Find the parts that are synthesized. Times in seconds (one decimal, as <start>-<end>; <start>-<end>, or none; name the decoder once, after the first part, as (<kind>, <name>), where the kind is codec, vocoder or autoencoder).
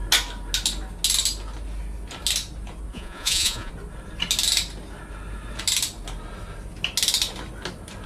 2.9-3.7 (vocoder, Vocos)